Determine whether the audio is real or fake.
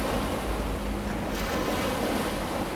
real